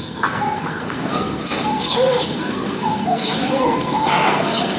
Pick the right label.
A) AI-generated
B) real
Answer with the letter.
A